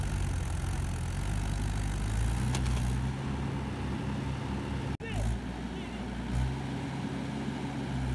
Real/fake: real